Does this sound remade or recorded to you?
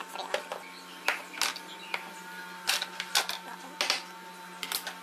recorded